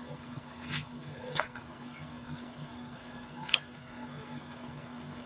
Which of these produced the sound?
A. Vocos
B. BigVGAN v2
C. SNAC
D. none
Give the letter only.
C